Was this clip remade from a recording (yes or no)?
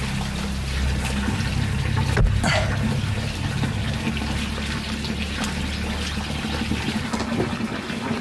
no